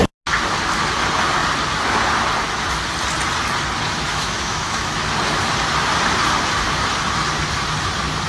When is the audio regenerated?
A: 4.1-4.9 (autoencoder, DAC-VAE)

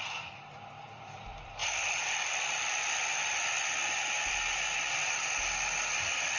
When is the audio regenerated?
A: 0.0-6.4 (vocoder, BigVGAN v2)

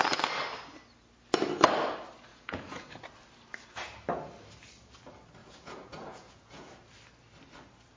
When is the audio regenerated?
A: 2.3-2.9 (vocoder, Vocos); 5.4-6.7

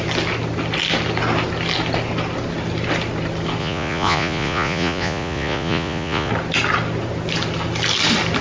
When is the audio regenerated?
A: 3.6-6.3 (vocoder, Vocos)

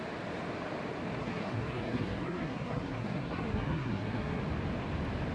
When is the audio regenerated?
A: 1.2-4.4 (codec, SNAC)

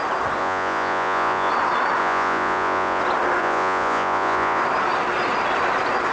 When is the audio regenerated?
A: 0.4-1.5 (vocoder, Vocos); 2.0-3.0; 3.4-4.6

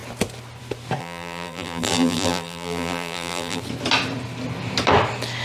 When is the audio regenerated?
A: 1.0-3.6 (vocoder, BigVGAN v2)

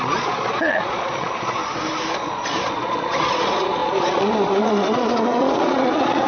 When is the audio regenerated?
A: 0.0-1.6 (vocoder, Vocos); 2.2-6.3